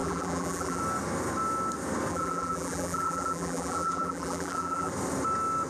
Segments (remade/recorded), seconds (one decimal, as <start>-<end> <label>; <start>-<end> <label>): 0.0-0.8 remade; 0.8-2.1 recorded; 2.1-4.9 remade; 4.9-5.7 recorded